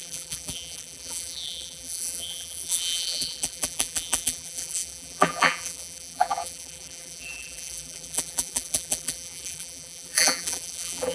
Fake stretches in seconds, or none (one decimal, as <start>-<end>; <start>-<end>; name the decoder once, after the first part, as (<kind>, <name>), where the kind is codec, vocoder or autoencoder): 0.0-11.1 (vocoder, BigVGAN v2)